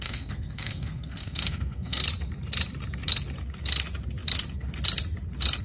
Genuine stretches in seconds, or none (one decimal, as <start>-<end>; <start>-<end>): 2.0-5.6